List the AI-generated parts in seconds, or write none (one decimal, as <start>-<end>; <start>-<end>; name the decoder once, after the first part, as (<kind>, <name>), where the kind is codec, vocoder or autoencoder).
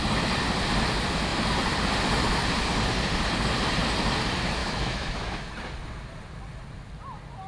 4.6-5.5 (autoencoder, DAC-VAE)